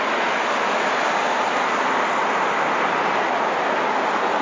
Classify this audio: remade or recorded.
recorded